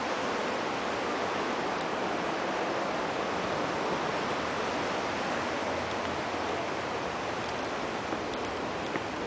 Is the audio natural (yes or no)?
yes